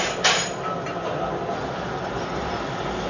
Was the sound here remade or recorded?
recorded